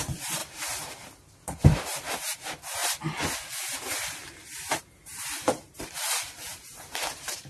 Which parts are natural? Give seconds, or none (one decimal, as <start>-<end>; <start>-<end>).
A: 2.8-4.3